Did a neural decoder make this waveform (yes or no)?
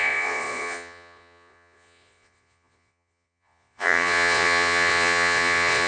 yes